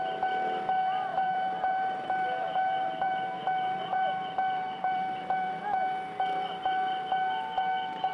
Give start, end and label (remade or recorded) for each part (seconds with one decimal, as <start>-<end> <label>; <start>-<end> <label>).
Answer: 0.0-1.1 recorded; 1.1-5.6 remade; 5.6-8.1 recorded